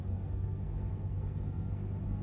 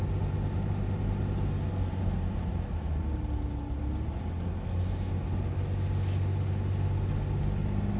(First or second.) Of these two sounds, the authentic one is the second